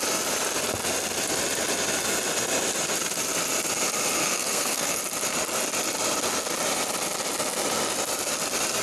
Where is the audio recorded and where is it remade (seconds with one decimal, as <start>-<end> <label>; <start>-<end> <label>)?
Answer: 0.0-4.2 recorded; 4.2-5.0 remade; 5.0-8.8 recorded